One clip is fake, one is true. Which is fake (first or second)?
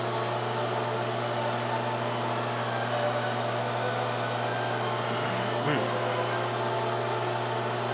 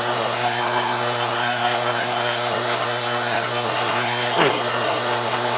second